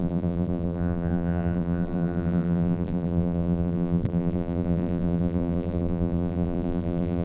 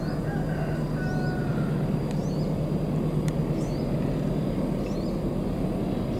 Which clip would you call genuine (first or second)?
second